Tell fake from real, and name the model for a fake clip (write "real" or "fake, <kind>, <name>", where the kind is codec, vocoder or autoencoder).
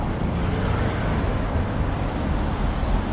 real